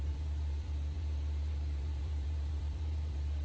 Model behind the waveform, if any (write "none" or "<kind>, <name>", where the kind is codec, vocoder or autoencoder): vocoder, BigVGAN v2